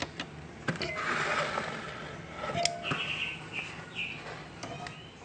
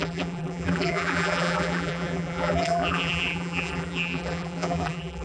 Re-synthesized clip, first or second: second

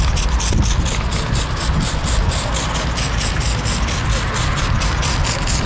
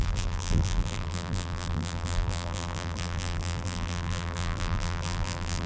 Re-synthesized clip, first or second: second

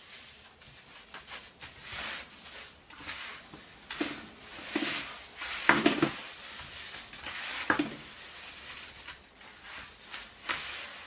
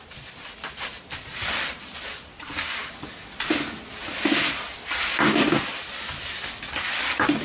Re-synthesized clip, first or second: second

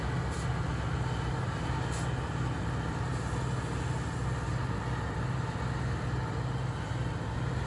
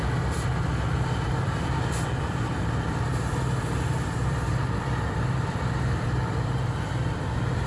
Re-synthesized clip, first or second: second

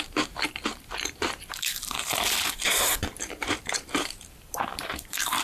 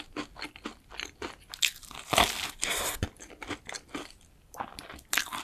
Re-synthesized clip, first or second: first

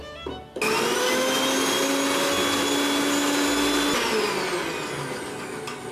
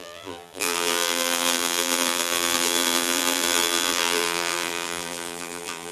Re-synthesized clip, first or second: second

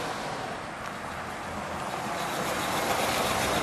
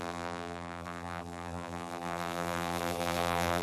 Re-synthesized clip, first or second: second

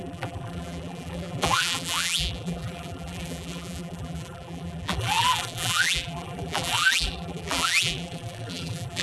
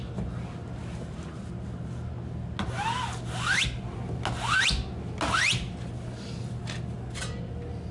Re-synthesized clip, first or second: first